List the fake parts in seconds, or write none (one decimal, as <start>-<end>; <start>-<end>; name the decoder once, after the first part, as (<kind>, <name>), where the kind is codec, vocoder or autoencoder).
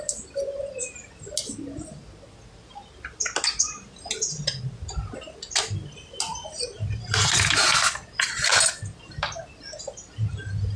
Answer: none